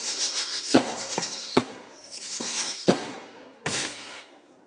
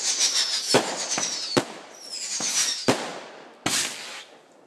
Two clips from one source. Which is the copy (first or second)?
first